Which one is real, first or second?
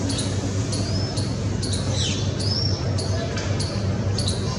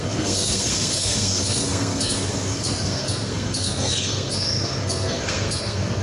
first